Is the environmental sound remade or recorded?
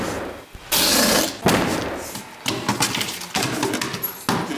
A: recorded